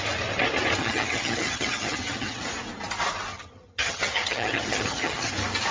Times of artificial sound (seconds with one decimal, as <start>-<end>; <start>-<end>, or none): 0.8-2.5; 3.3-5.3